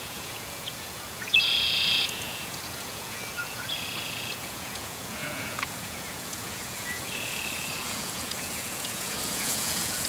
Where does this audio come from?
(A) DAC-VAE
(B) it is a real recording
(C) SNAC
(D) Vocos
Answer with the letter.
D